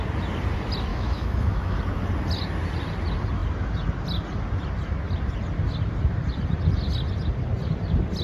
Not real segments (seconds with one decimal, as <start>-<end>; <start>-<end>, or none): 0.9-1.8